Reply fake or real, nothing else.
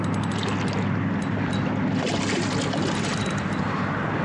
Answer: real